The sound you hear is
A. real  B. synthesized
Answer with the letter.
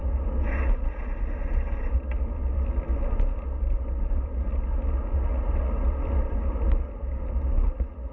A